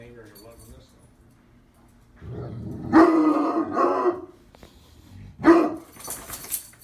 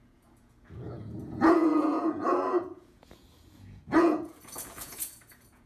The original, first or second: first